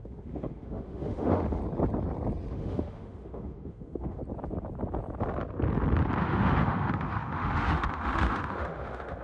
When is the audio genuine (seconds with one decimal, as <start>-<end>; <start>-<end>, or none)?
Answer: 1.6-2.5; 4.2-6.2